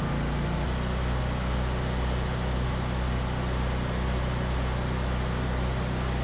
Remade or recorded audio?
recorded